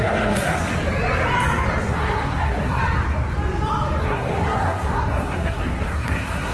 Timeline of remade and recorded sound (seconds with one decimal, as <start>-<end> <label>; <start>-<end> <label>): 0.0-0.7 remade; 0.7-1.8 recorded; 1.8-2.8 remade; 2.8-4.0 recorded; 4.0-6.5 remade